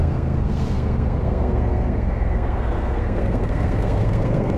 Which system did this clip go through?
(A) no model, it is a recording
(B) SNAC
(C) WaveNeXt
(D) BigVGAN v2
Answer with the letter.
B